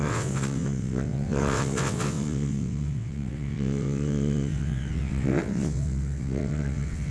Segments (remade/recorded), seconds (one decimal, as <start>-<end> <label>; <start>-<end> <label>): 0.0-7.1 remade